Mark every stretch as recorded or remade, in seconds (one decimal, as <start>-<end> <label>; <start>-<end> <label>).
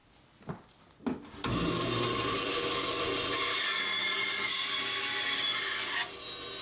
0.0-2.3 recorded; 2.3-3.0 remade; 3.0-3.5 recorded; 3.5-4.7 remade; 4.7-6.6 recorded